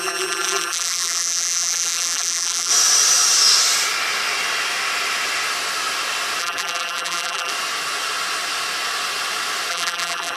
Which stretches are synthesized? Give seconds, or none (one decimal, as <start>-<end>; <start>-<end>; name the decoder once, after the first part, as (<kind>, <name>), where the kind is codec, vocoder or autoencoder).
0.0-2.7 (vocoder, BigVGAN v2); 6.4-7.5; 9.7-10.4